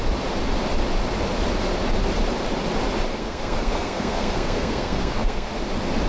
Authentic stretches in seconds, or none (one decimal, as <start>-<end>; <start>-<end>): 0.0-3.2; 5.5-6.1